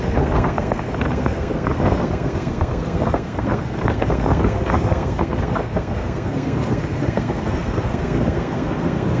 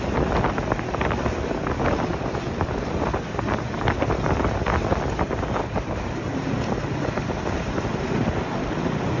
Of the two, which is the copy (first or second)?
first